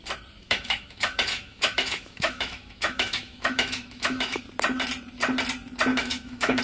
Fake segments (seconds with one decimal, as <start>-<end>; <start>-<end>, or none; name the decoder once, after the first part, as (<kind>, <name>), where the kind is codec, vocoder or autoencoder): 0.4-4.4 (autoencoder, DAC-VAE); 5.9-6.6